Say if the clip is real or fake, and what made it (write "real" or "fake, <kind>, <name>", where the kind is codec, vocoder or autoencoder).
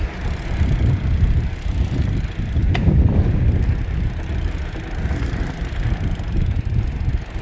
real